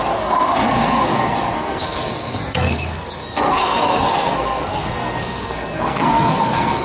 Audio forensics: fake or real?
fake